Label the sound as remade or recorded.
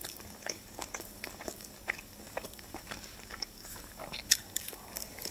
remade